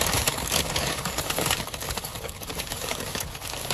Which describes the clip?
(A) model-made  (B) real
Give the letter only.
A